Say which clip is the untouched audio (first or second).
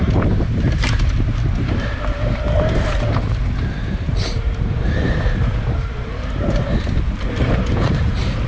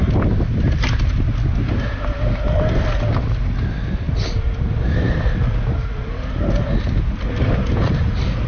second